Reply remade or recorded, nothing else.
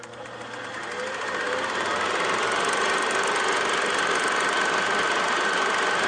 recorded